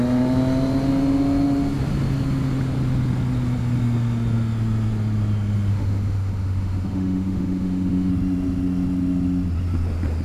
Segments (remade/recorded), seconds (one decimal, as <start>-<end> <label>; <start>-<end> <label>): 0.0-5.7 recorded; 5.7-8.1 remade; 8.1-10.2 recorded